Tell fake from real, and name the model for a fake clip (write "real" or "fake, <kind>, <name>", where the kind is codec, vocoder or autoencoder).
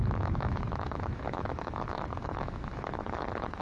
fake, autoencoder, DAC-VAE